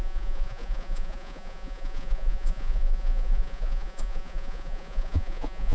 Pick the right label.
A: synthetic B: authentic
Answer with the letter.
A